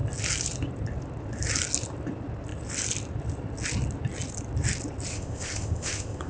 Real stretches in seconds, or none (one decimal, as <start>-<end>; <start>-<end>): 0.0-5.1

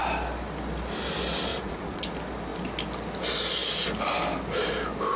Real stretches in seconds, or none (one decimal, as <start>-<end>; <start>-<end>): 0.0-1.5; 2.0-5.2

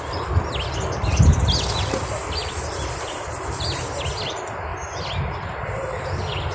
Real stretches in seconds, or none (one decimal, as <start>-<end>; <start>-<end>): 0.0-6.5

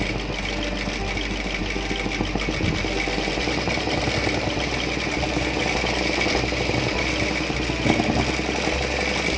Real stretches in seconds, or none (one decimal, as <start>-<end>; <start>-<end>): 0.0-9.4

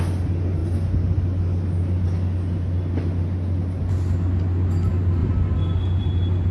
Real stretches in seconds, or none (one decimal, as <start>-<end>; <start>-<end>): 0.0-6.5